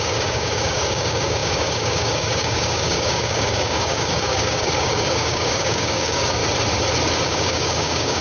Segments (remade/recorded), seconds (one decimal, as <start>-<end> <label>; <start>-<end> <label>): 0.0-6.4 remade; 6.4-7.2 recorded; 7.2-8.2 remade